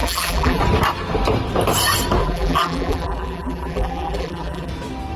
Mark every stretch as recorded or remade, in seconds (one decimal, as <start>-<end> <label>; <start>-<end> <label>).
0.0-0.6 remade; 0.6-2.2 recorded; 2.2-4.7 remade; 4.7-5.2 recorded